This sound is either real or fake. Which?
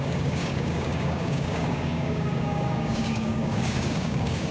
fake